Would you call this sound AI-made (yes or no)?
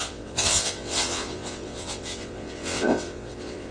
yes